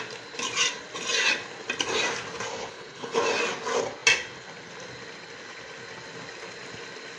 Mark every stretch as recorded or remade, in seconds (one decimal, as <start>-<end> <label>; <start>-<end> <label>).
0.0-2.5 recorded; 2.5-3.2 remade; 3.2-7.2 recorded